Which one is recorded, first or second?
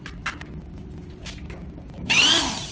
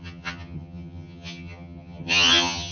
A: first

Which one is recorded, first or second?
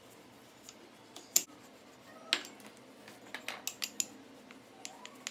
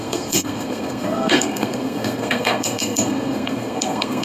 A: first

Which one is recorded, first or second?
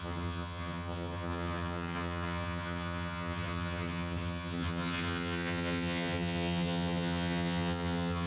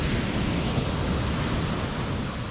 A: second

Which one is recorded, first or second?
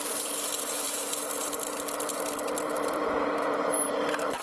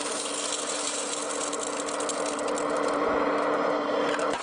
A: second